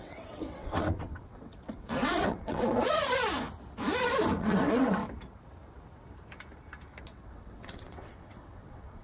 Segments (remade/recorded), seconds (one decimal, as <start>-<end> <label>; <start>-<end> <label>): 0.0-3.0 remade; 3.0-4.4 recorded; 4.4-5.0 remade; 5.0-7.0 recorded; 7.0-9.0 remade